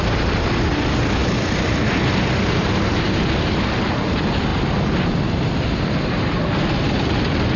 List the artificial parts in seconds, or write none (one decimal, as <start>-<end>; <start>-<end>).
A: none